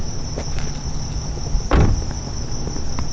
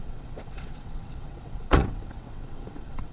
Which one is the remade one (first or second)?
second